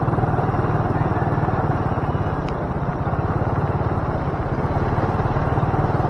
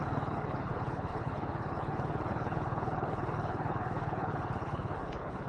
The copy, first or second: second